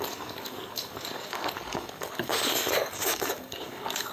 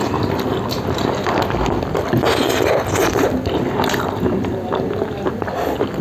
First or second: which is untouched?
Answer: second